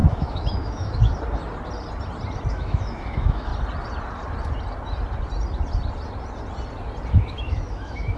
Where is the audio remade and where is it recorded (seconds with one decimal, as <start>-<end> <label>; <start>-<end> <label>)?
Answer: 0.0-1.1 remade; 1.1-2.5 recorded; 2.5-3.5 remade; 3.5-7.1 recorded; 7.1-8.2 remade